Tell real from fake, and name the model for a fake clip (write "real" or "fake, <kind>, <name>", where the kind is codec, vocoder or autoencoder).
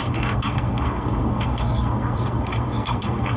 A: fake, codec, SNAC